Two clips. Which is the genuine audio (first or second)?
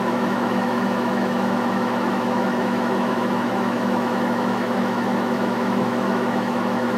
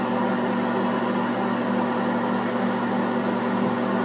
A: second